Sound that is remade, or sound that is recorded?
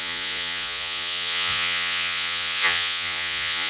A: remade